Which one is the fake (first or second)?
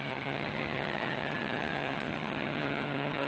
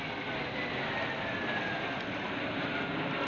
first